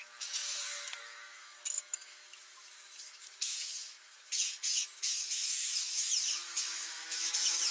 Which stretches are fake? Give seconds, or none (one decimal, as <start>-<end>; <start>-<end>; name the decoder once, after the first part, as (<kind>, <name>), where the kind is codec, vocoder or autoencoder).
0.0-7.7 (autoencoder, DAC-VAE)